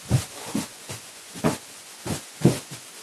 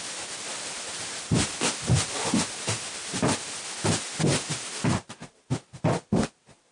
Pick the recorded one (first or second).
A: second